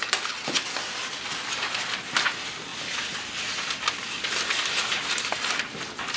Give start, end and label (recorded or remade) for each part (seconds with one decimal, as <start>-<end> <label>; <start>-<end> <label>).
0.0-6.2 recorded